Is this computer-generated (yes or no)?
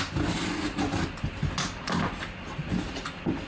no